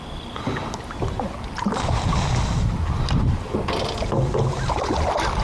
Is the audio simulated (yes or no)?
no